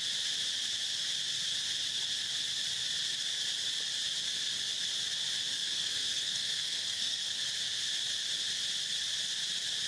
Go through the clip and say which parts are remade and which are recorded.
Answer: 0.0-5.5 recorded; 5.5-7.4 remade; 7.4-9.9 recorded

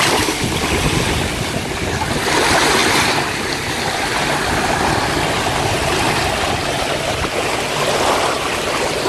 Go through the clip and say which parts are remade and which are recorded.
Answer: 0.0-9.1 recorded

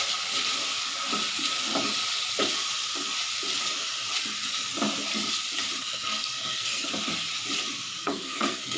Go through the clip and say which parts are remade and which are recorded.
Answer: 0.0-5.8 recorded; 5.8-6.9 remade; 6.9-8.0 recorded; 8.0-8.8 remade